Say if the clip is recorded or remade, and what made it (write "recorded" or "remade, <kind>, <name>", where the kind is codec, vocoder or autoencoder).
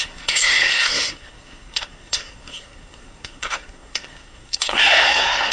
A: remade, codec, SNAC